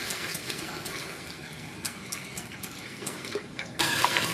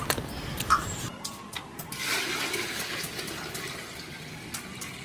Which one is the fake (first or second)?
first